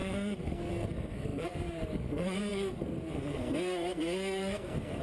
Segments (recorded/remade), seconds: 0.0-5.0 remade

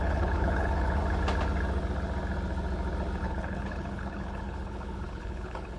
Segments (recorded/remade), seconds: 0.0-1.0 remade; 1.0-3.2 recorded; 3.2-5.8 remade

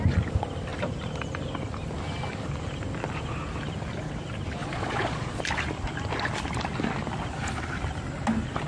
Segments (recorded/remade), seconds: 0.0-4.6 recorded; 4.6-5.4 remade; 5.4-8.7 recorded